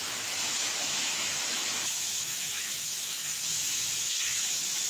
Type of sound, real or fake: fake